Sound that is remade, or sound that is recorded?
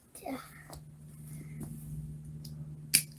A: recorded